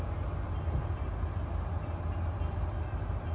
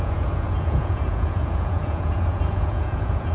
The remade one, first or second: second